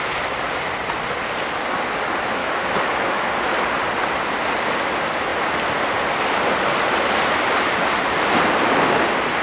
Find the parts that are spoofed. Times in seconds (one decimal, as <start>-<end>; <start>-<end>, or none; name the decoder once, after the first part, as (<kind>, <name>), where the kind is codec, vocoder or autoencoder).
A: 2.4-3.2 (autoencoder, DAC-VAE)